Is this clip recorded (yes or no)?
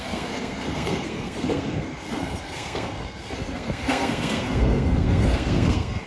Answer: no